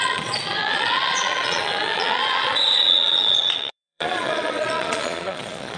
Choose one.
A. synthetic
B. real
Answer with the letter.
A